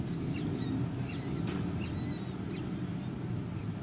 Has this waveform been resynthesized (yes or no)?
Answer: no